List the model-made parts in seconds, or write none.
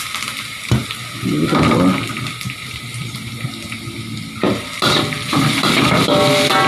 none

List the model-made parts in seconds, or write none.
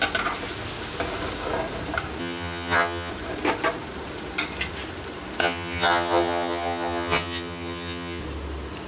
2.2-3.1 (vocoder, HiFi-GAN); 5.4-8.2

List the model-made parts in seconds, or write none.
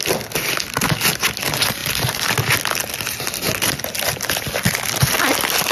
none